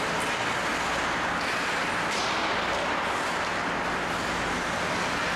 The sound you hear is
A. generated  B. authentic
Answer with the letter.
B